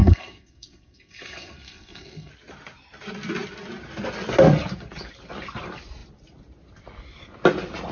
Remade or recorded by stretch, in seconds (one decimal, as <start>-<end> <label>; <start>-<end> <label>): 0.0-2.3 remade; 2.3-7.9 recorded